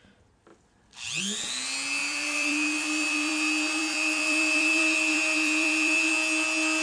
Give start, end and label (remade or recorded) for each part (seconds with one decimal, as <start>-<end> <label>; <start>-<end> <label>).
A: 0.0-2.0 recorded; 2.0-6.1 remade; 6.1-6.8 recorded